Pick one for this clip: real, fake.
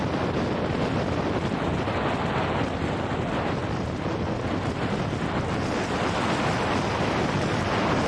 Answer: real